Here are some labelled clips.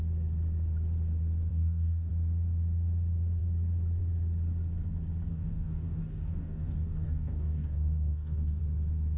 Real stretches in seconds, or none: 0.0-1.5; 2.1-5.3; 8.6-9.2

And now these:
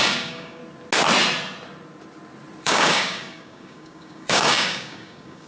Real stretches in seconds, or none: 0.6-2.6